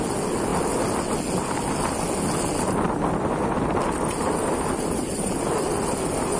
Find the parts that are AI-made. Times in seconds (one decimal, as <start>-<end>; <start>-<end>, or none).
none